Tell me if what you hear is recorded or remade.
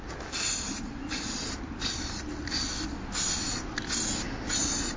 recorded